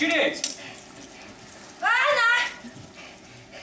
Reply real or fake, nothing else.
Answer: real